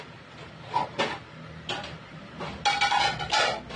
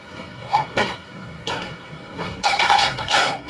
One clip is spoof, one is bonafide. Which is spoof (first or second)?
second